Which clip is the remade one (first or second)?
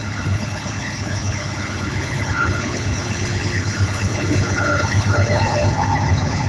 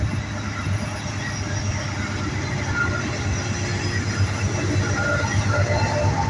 first